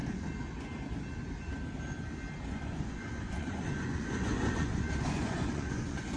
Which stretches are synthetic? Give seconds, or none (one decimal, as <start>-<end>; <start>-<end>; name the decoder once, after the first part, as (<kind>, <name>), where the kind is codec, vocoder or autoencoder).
2.5-6.2 (vocoder, Vocos)